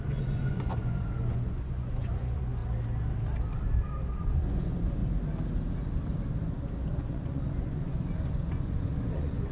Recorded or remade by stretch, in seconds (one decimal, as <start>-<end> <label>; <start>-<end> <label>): 0.0-2.6 remade; 2.6-4.3 recorded; 4.3-5.0 remade; 5.0-7.0 recorded; 7.0-9.5 remade